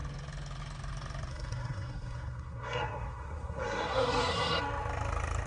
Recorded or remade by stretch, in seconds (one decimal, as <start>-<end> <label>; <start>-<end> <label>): 0.0-1.3 recorded; 1.3-4.6 remade; 4.6-5.5 recorded